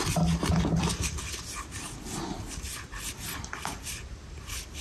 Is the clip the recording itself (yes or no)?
yes